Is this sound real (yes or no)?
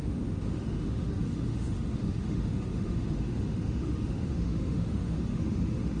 no